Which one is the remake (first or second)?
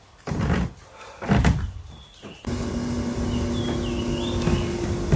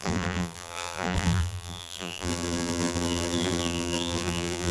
second